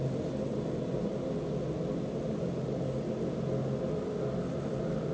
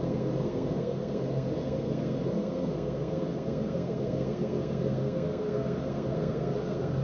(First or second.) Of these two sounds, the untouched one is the first